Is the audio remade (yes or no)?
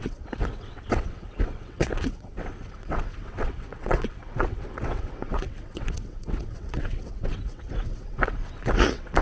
yes